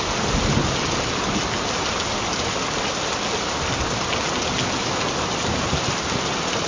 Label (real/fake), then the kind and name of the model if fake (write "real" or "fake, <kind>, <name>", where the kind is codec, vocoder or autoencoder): real